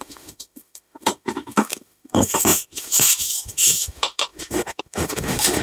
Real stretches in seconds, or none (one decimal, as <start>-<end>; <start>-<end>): none